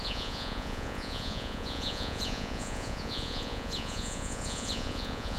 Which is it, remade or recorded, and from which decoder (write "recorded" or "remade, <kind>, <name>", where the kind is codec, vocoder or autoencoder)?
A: remade, vocoder, Vocos